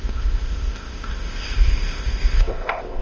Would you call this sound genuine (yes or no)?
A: no